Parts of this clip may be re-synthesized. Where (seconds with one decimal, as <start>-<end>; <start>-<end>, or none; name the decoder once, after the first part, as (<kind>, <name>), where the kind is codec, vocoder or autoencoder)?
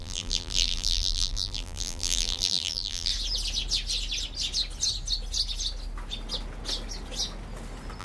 0.0-3.1 (vocoder, BigVGAN v2)